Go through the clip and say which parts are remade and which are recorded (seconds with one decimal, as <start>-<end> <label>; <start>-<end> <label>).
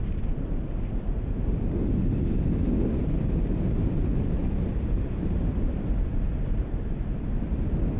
0.0-8.0 recorded